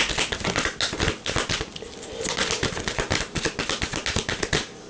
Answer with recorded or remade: recorded